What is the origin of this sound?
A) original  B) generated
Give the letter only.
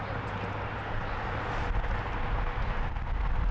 A